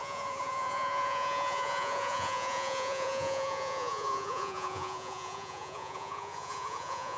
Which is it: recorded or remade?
remade